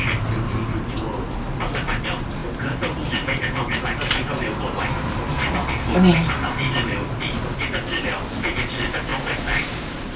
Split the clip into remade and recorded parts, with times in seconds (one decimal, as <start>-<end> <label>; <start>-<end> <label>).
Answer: 0.0-10.2 remade